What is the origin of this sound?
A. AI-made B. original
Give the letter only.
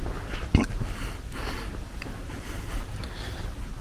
B